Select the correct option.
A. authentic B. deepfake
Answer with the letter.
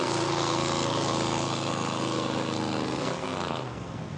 B